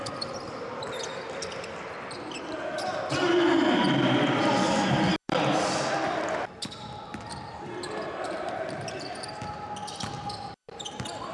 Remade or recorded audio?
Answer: recorded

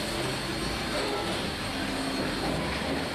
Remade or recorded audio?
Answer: recorded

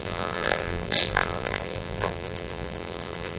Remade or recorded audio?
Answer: remade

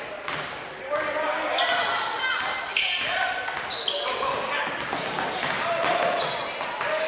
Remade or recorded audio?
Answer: recorded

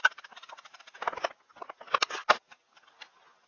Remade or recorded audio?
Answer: recorded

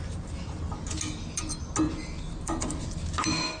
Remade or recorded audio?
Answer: recorded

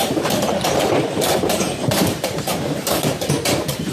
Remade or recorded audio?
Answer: remade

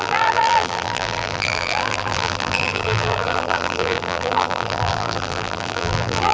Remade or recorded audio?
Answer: remade